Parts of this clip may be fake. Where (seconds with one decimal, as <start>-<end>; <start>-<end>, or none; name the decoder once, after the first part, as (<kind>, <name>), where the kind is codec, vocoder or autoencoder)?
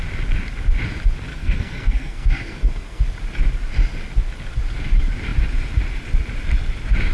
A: 1.3-3.0 (codec, SNAC)